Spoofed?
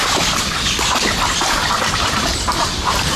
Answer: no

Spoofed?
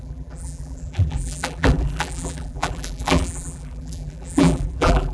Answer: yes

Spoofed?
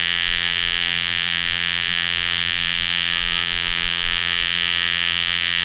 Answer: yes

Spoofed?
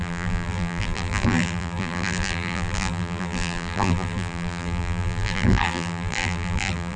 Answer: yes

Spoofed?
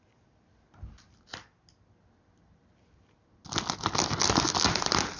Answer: no